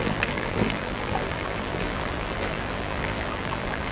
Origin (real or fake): fake